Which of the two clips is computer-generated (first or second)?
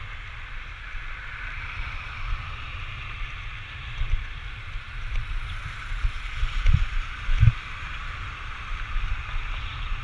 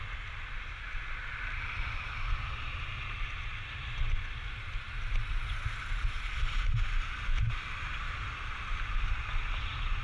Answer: first